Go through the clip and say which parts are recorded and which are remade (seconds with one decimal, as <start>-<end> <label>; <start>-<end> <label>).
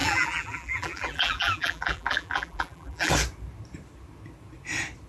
0.0-3.1 remade; 3.1-5.1 recorded